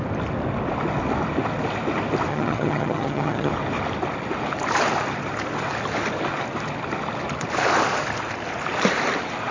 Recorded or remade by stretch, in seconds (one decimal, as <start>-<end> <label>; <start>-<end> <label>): 0.0-2.3 recorded; 2.3-3.5 remade; 3.5-9.5 recorded